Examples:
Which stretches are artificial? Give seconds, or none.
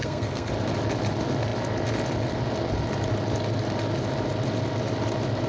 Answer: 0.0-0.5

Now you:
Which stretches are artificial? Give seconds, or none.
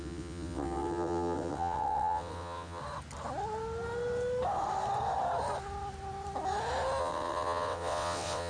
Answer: 0.0-2.8; 7.0-8.5